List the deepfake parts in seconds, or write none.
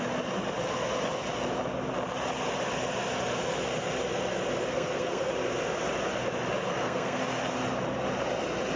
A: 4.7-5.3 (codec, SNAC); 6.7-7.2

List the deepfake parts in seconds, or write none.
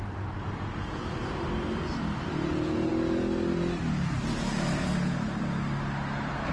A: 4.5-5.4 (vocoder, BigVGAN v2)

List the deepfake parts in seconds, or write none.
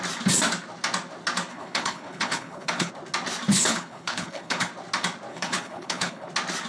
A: 1.5-2.9 (codec, HILCodec); 3.5-4.7; 5.3-6.3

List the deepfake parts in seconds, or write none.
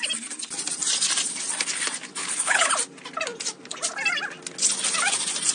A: 2.2-2.7 (codec, HILCodec)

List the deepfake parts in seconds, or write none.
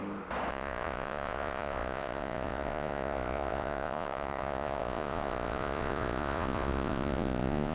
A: 0.5-7.7 (vocoder, Vocos)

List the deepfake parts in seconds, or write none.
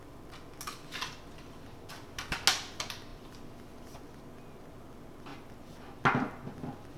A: none